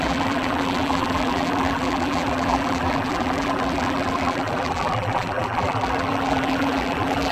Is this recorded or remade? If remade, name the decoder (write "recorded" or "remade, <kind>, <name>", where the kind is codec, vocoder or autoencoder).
remade, vocoder, BigVGAN v2